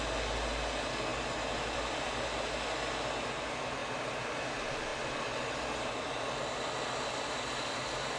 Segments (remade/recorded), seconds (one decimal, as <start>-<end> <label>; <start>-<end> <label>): 0.0-1.1 recorded; 1.1-2.0 remade; 2.0-8.2 recorded